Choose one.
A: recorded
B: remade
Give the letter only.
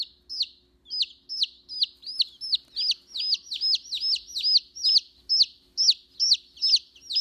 A